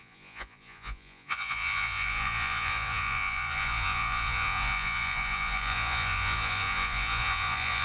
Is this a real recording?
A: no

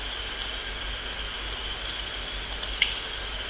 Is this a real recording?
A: yes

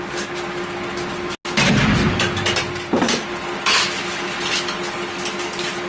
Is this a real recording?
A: yes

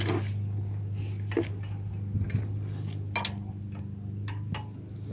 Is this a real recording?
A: yes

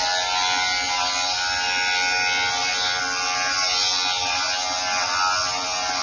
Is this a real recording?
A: yes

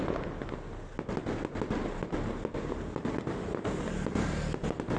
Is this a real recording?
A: yes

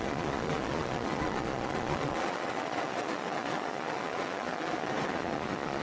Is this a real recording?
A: no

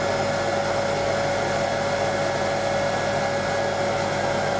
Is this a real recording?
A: yes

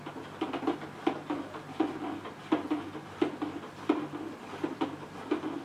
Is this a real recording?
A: yes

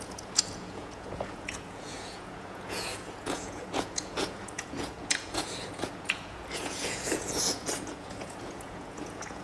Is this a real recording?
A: no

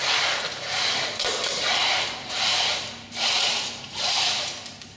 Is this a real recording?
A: yes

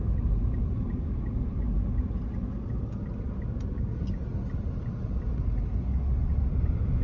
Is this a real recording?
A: yes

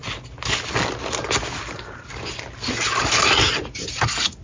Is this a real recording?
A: yes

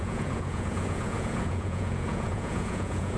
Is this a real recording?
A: no